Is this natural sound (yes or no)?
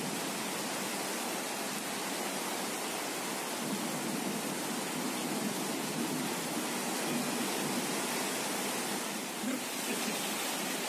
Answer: yes